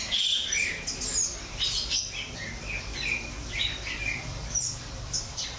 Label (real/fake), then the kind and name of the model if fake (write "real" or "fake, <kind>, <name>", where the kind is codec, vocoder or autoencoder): fake, vocoder, BigVGAN v2